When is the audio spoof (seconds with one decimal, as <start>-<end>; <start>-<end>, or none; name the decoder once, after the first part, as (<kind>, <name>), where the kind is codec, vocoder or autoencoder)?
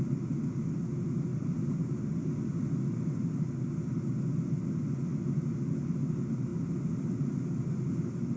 1.3-2.4 (vocoder, BigVGAN v2)